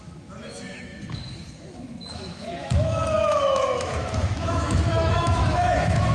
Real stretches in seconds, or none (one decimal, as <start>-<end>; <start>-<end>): none